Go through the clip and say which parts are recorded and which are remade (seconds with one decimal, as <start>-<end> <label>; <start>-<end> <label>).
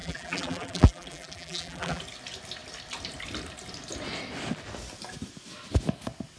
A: 0.0-2.0 remade; 2.0-6.4 recorded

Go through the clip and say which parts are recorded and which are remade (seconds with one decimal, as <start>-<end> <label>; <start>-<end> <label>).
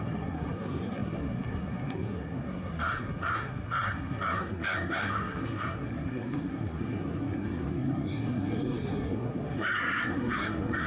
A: 0.0-10.9 remade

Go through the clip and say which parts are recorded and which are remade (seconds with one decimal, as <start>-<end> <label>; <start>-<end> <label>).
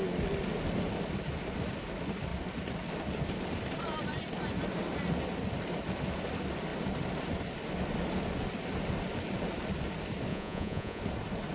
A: 0.0-10.3 recorded; 10.3-11.0 remade; 11.0-11.5 recorded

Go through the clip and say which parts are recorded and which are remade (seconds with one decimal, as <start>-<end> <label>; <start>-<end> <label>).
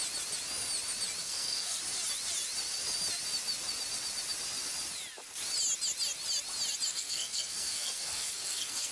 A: 0.0-1.2 recorded; 1.2-1.8 remade; 1.8-6.9 recorded; 6.9-8.9 remade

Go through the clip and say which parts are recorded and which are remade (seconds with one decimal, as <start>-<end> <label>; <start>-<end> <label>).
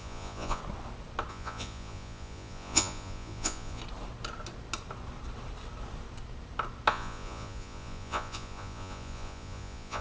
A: 0.0-0.6 remade; 0.6-1.3 recorded; 1.3-3.8 remade; 3.8-6.9 recorded; 6.9-10.0 remade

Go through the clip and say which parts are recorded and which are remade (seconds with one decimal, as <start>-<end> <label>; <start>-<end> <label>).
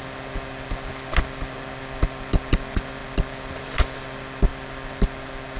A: 0.0-5.6 recorded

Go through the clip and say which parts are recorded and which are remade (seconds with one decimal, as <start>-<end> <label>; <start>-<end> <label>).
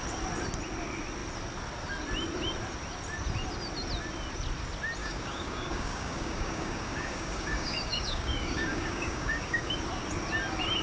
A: 0.0-5.0 recorded; 5.0-9.7 remade; 9.7-10.8 recorded